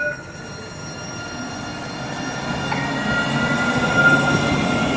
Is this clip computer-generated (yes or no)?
no